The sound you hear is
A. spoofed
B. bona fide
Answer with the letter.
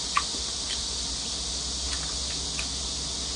B